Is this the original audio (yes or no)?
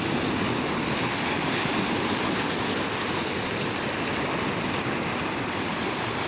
yes